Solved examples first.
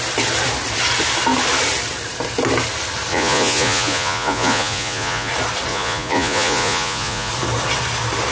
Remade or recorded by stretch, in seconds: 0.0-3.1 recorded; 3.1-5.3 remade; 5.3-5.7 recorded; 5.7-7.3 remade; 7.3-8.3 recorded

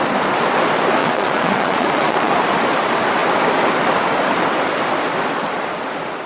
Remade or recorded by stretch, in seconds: 0.0-1.0 recorded; 1.0-2.3 remade; 2.3-6.3 recorded

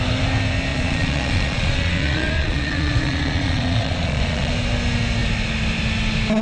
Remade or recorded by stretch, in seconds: 0.0-0.7 recorded; 0.7-4.5 remade; 4.5-6.4 recorded

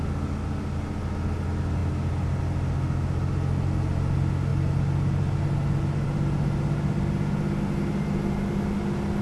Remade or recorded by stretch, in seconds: 0.0-9.2 recorded